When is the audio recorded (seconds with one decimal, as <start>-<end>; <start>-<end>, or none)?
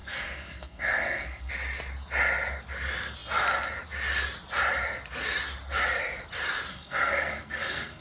1.5-6.7